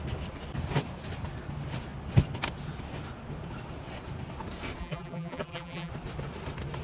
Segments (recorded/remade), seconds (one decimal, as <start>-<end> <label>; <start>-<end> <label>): 0.0-4.8 recorded; 4.8-5.9 remade; 5.9-6.8 recorded